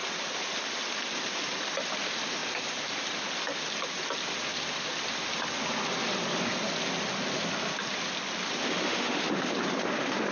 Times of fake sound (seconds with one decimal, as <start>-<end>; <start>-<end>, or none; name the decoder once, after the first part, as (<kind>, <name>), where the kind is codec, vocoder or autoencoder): 8.6-9.3 (autoencoder, DAC-VAE)